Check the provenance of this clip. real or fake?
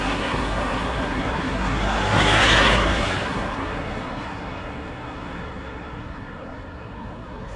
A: fake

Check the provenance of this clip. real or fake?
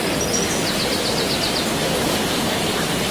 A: real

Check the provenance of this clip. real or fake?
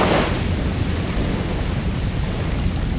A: real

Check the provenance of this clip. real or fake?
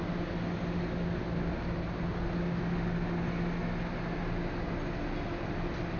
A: real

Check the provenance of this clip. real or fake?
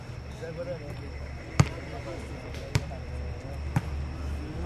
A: real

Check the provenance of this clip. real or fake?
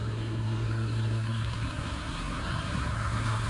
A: fake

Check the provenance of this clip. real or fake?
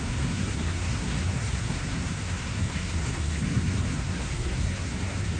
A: fake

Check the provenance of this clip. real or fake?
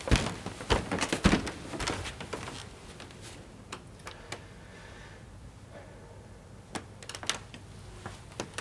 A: real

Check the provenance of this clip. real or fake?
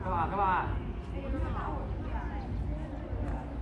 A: real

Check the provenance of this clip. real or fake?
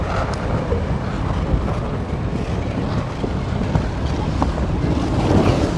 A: real